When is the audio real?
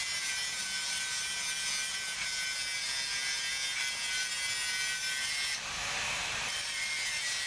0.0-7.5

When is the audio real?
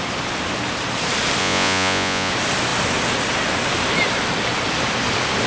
0.0-1.4; 2.3-5.5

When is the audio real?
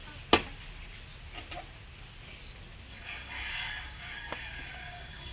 0.0-2.9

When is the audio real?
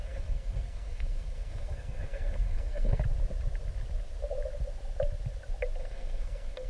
3.0-5.8